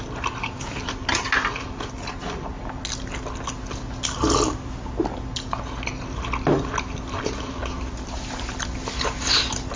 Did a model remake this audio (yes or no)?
no